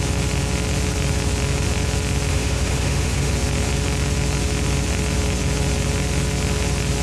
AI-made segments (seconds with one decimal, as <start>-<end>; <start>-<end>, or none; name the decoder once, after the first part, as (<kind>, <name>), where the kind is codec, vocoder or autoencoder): 2.3-3.3 (autoencoder, DAC-VAE)